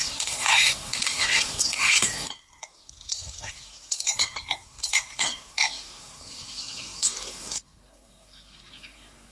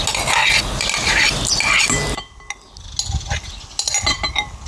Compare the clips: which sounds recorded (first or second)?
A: second